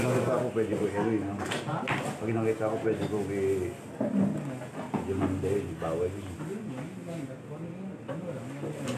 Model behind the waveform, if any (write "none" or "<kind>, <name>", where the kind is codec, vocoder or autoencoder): none